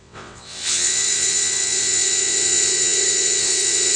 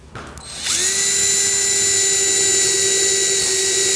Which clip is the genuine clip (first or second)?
second